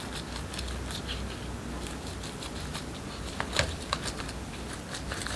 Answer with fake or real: real